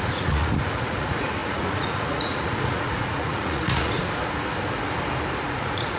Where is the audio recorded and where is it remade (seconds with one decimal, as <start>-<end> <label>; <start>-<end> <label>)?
0.0-4.0 remade; 4.0-5.4 recorded; 5.4-6.0 remade